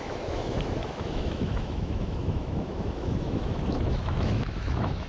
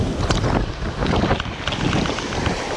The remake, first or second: first